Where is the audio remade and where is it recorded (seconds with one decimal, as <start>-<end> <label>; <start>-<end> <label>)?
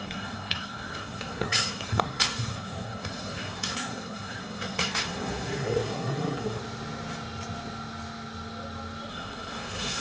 0.0-6.6 remade; 6.6-9.1 recorded; 9.1-10.0 remade